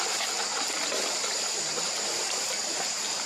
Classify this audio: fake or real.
real